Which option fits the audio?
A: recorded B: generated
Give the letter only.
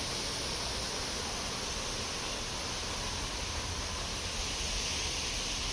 A